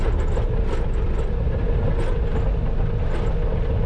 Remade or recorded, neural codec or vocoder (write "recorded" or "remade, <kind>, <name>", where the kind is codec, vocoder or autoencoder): recorded